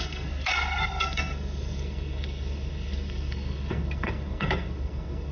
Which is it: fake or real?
fake